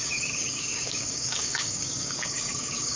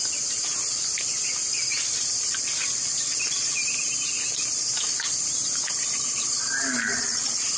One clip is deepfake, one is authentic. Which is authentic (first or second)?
second